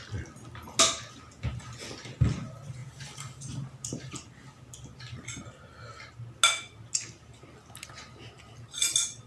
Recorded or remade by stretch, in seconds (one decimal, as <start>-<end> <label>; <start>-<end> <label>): 0.0-9.3 recorded